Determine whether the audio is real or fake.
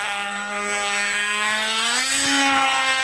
fake